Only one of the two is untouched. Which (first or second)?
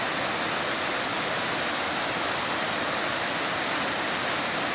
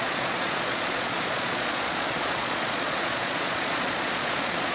first